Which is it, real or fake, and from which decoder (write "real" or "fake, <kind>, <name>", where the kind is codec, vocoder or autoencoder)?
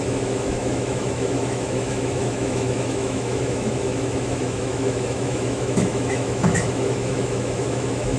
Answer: fake, autoencoder, DAC-VAE